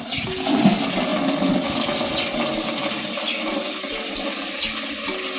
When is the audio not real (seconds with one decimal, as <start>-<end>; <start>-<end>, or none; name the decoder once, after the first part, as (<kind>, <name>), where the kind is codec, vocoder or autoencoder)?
none